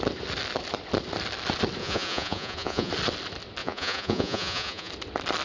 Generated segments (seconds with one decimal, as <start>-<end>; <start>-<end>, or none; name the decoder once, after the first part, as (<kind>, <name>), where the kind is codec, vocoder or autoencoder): 1.8-2.9 (vocoder, Vocos); 3.6-4.9